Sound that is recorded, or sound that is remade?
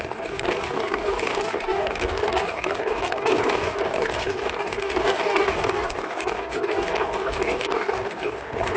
remade